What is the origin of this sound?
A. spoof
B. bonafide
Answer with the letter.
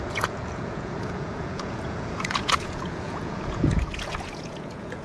A